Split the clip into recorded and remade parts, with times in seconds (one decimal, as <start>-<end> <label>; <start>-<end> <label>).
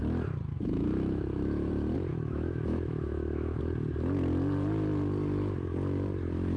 0.0-0.5 recorded; 0.5-1.7 remade; 1.7-2.1 recorded; 2.1-3.6 remade; 3.6-6.6 recorded